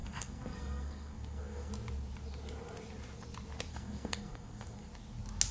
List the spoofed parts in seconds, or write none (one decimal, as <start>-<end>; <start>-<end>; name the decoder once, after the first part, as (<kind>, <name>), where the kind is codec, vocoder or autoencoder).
0.0-1.7 (codec, SNAC); 3.7-4.9